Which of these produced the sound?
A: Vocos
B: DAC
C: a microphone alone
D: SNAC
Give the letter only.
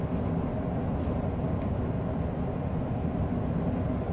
C